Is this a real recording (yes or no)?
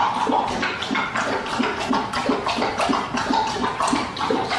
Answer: yes